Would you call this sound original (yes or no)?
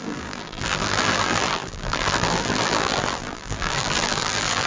no